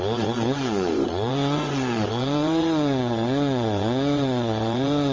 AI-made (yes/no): yes